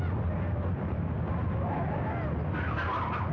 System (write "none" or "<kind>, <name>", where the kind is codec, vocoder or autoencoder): none